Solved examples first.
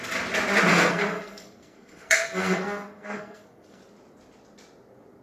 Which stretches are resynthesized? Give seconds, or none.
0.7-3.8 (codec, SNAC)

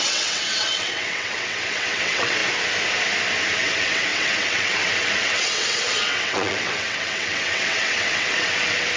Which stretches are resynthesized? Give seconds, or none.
0.0-2.4 (vocoder, WaveNeXt); 3.6-9.0